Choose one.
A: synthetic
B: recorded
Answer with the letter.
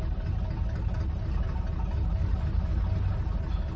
B